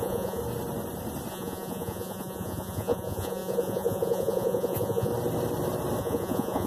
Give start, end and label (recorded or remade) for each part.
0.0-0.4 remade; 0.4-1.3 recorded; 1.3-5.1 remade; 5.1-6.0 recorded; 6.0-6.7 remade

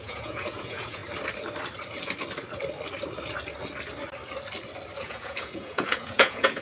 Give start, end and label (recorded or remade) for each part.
0.0-1.0 remade; 1.0-5.0 recorded; 5.0-6.6 remade

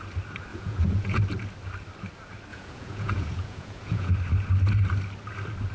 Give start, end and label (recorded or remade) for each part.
0.0-0.5 recorded; 0.5-1.2 remade; 1.2-2.5 recorded; 2.5-4.1 remade; 4.1-5.7 recorded

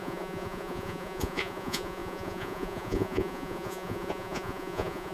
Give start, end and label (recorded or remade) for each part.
0.0-5.1 remade